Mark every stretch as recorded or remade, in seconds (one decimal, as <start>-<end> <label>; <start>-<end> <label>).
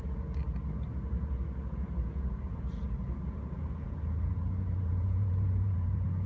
0.0-0.4 remade; 0.4-1.0 recorded; 1.0-6.3 remade